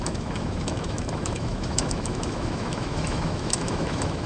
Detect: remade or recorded remade